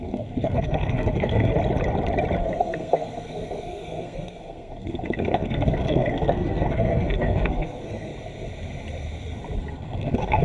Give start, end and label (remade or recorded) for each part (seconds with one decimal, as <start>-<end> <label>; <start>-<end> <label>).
0.0-1.5 remade; 1.5-2.4 recorded; 2.4-8.1 remade; 8.1-9.6 recorded; 9.6-10.4 remade